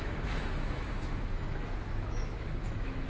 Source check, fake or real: fake